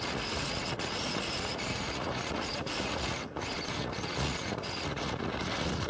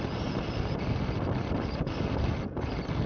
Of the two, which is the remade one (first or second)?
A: first